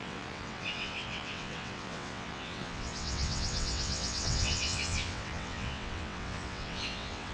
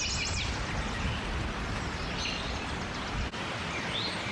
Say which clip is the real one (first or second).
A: second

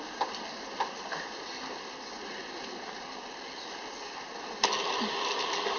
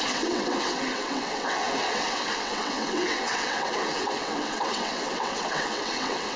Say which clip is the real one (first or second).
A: first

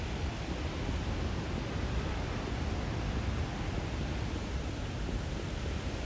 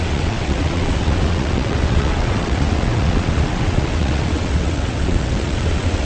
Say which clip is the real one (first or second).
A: first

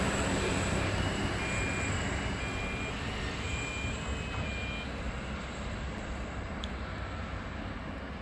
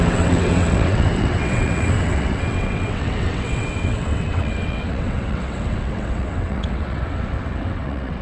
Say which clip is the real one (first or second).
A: first